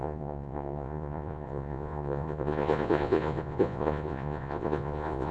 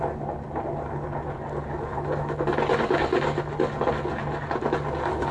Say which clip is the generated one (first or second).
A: first